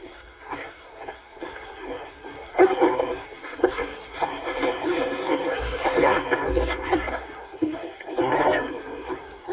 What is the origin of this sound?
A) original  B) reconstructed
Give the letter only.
B